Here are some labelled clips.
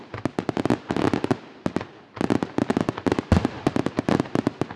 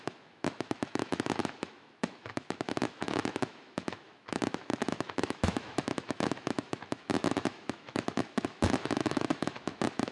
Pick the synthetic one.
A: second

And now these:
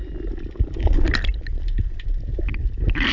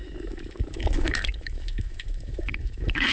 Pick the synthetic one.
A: second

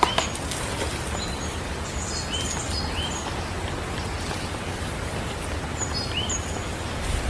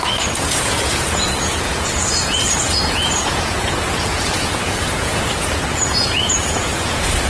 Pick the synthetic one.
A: second